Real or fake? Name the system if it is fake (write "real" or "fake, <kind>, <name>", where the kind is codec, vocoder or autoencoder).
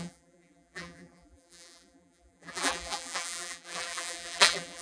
fake, vocoder, BigVGAN v2